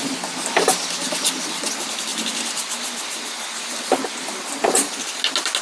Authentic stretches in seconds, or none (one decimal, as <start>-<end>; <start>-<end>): 0.0-5.6